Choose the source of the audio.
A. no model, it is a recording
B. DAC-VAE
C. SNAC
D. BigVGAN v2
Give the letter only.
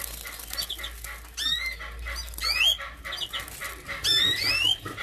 A